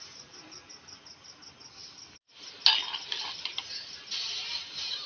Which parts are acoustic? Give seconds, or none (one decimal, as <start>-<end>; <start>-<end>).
0.0-5.1